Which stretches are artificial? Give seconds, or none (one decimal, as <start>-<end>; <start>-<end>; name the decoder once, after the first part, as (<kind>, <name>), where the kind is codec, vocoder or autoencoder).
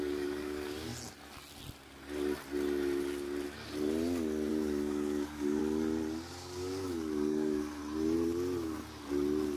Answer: 0.0-0.9 (codec, DAC); 4.5-5.6; 6.3-7.8